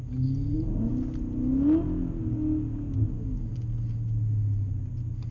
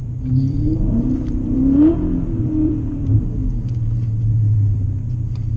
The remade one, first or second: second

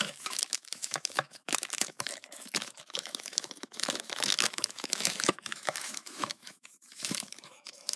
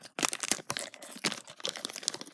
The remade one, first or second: first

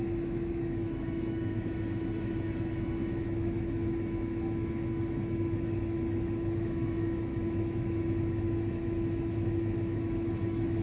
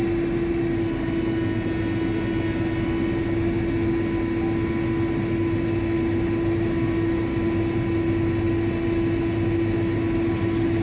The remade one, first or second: first